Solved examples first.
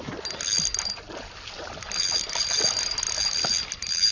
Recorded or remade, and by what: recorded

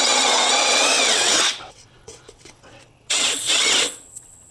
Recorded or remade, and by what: remade, vocoder, WaveNeXt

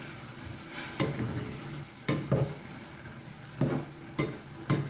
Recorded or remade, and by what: recorded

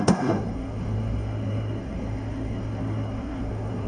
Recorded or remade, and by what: remade, codec, SNAC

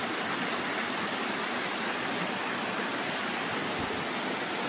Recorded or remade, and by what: recorded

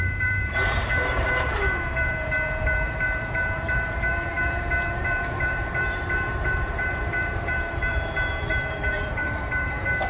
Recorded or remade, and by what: remade, vocoder, BigVGAN v2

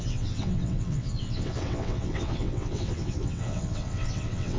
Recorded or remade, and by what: remade, vocoder, WaveNeXt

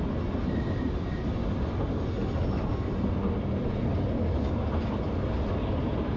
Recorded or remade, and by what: recorded